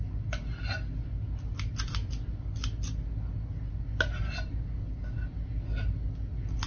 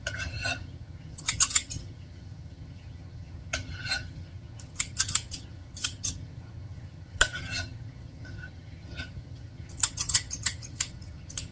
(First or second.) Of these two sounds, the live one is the first